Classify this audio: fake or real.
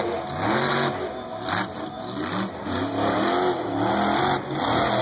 real